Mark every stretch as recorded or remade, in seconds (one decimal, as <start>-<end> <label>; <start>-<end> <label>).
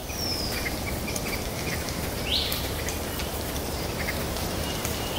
0.0-2.3 recorded; 2.3-2.8 remade; 2.8-3.2 recorded; 3.2-5.2 remade